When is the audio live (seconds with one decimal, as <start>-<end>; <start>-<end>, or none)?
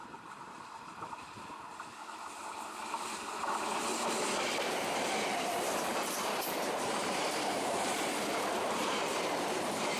none